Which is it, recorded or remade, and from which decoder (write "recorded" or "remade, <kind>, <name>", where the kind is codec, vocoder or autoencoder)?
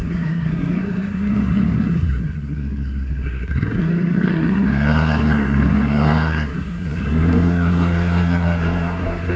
remade, codec, SNAC